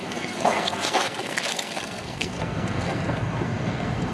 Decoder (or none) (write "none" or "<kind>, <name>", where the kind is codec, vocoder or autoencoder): codec, SNAC